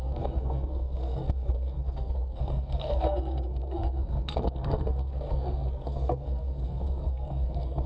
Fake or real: fake